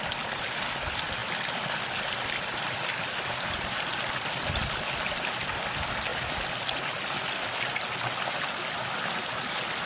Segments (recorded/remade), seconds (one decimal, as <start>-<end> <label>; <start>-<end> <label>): 0.0-9.9 recorded